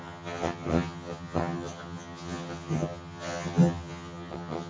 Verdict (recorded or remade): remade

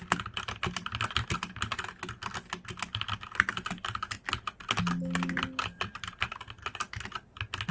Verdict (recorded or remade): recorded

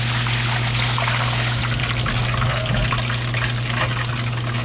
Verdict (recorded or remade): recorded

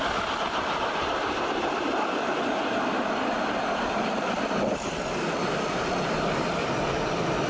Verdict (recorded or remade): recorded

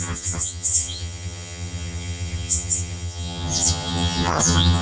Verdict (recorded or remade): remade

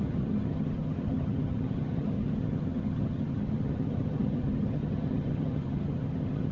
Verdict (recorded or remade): remade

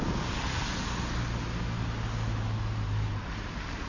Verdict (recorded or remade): recorded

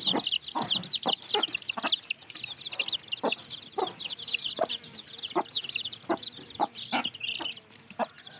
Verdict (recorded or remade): recorded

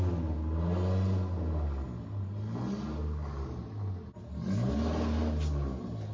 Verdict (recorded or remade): recorded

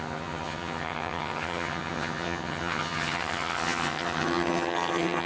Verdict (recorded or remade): remade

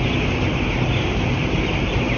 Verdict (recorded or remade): recorded